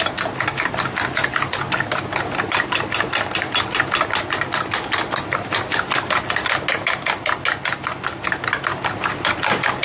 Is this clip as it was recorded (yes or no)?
yes